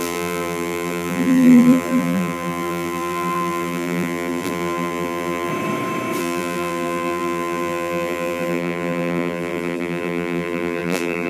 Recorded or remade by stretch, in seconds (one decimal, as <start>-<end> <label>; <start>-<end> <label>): 0.0-5.5 remade; 5.5-6.2 recorded; 6.2-11.3 remade